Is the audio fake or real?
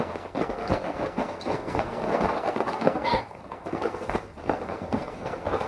fake